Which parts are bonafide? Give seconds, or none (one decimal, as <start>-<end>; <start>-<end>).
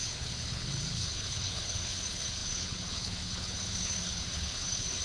none